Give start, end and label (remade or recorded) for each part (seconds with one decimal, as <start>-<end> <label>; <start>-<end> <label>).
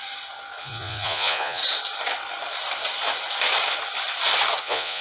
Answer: 0.0-0.6 recorded; 0.6-1.6 remade; 1.6-4.6 recorded; 4.6-5.0 remade